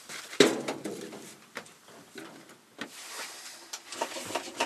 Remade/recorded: remade